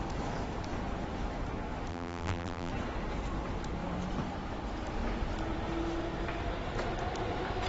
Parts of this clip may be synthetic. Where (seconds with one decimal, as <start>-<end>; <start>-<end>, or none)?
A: 1.9-2.7